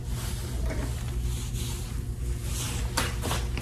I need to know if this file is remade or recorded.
recorded